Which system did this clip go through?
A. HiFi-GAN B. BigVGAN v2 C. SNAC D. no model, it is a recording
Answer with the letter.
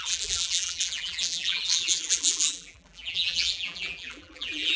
B